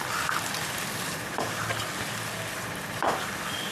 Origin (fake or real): real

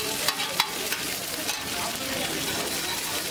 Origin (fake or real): real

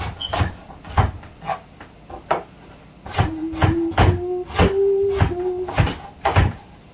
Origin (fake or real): real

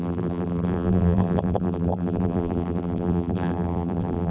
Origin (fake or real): fake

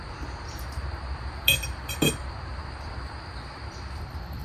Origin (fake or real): fake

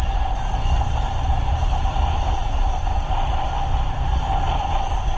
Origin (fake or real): fake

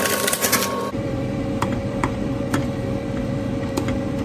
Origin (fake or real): fake